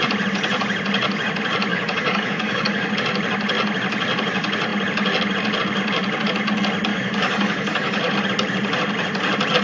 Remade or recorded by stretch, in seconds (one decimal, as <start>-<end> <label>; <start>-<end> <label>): 0.0-1.7 recorded; 1.7-2.9 remade; 2.9-6.9 recorded; 6.9-8.0 remade; 8.0-9.6 recorded